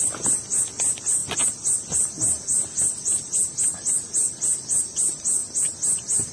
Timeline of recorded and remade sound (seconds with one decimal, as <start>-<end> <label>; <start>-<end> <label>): 0.0-6.3 recorded